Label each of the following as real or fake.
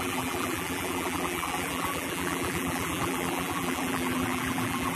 fake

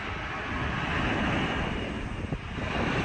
fake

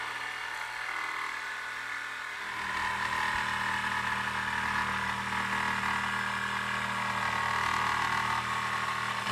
real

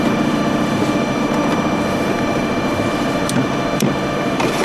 fake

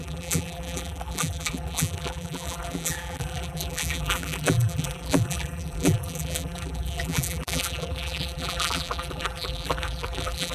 fake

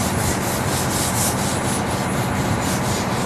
real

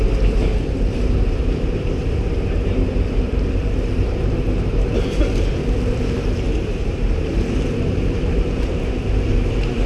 fake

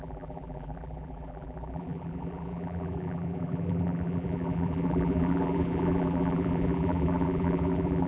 fake